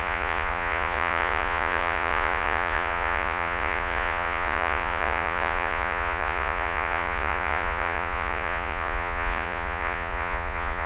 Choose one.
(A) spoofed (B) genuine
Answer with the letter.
A